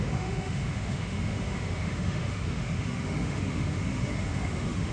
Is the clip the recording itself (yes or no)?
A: no